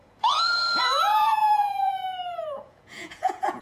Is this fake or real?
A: fake